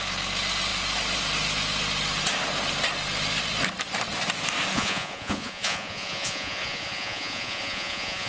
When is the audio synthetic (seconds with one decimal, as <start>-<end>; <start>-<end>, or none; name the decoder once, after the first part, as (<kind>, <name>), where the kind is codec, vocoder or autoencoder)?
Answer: 4.7-8.3 (vocoder, Vocos)